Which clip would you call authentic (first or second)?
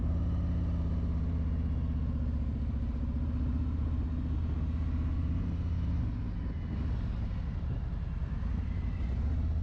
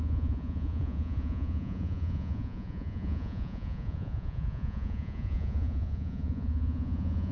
first